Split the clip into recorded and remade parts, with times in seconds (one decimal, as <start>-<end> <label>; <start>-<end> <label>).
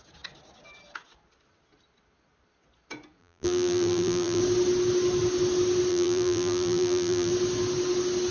0.0-3.2 recorded; 3.2-4.4 remade; 4.4-5.9 recorded; 5.9-7.3 remade; 7.3-8.3 recorded